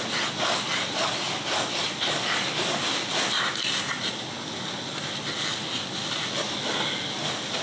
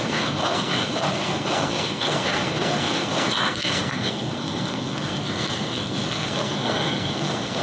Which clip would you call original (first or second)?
first